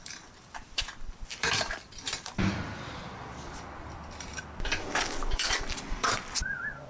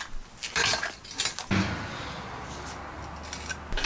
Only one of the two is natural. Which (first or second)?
second